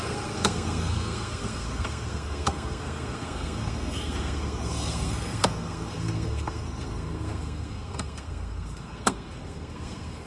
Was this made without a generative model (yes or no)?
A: no